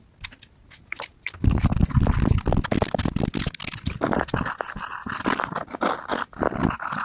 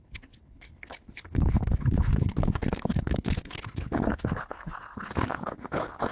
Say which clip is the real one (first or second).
first